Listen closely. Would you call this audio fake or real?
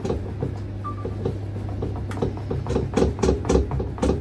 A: real